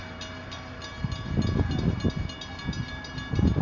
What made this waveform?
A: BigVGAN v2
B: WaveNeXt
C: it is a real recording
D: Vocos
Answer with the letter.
C